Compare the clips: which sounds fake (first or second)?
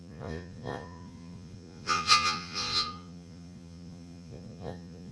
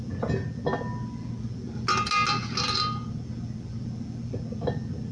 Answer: first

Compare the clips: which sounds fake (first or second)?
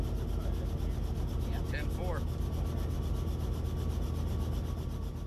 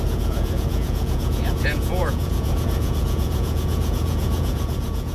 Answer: second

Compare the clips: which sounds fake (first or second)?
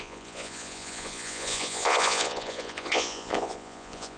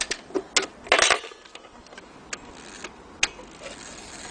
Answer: first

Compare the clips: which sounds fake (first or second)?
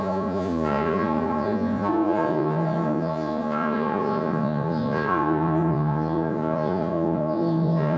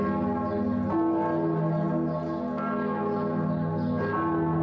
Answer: first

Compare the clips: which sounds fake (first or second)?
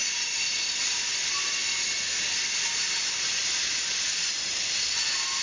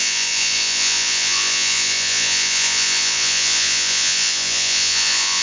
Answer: second